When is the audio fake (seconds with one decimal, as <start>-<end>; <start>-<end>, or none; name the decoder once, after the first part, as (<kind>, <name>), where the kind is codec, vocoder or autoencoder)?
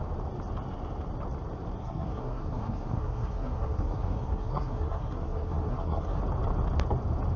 1.8-6.2 (codec, SNAC)